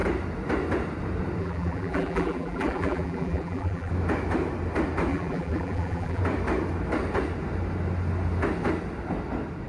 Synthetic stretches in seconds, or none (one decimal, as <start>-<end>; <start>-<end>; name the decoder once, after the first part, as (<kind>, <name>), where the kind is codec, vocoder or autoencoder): 1.4-3.9 (vocoder, BigVGAN v2); 5.1-6.2